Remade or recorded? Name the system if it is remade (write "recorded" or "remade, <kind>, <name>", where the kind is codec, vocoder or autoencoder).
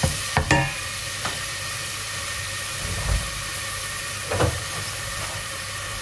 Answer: remade, vocoder, BigVGAN v2